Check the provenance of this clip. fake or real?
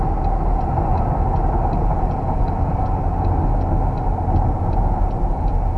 real